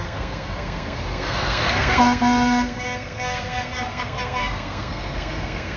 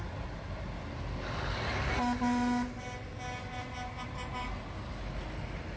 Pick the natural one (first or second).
second